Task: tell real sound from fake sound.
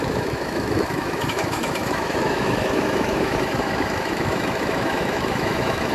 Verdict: fake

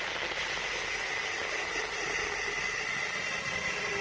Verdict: real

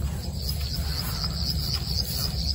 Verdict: real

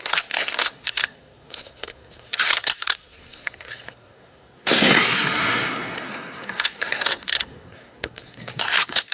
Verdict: fake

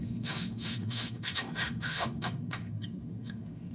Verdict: fake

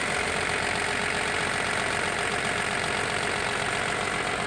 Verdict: real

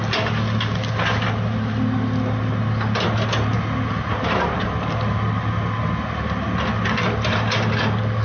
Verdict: real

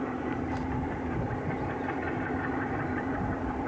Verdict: fake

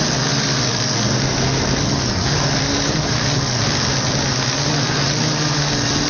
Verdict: real